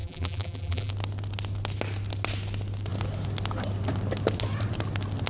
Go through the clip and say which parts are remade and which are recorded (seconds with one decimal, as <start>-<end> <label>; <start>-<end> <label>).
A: 0.0-0.9 remade; 0.9-5.3 recorded